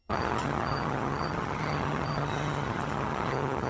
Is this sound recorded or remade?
remade